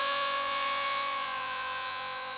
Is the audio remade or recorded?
remade